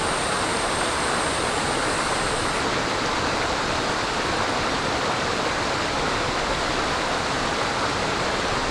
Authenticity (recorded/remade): recorded